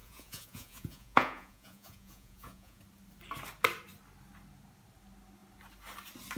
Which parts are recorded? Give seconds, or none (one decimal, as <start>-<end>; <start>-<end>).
2.8-6.4